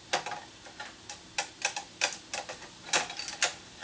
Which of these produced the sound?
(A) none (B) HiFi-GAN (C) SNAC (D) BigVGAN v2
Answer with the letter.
A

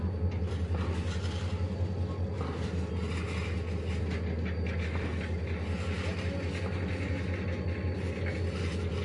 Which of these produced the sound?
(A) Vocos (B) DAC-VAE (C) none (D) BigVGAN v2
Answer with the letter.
C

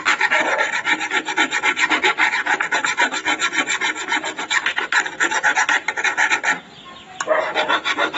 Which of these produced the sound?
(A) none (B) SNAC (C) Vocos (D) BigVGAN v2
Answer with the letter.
A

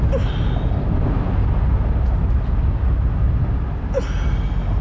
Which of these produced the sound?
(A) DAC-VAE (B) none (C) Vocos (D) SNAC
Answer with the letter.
B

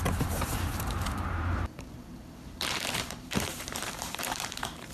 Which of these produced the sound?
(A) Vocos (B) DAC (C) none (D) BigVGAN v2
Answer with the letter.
D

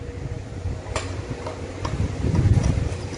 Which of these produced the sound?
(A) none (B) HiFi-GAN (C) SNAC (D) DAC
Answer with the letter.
A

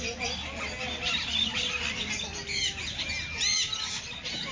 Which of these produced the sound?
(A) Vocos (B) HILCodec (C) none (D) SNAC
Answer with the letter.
C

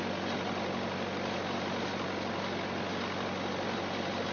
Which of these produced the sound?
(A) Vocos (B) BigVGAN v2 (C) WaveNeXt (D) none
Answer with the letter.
D